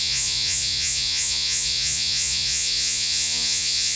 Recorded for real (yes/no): no